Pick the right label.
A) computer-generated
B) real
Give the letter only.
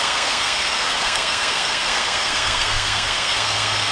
A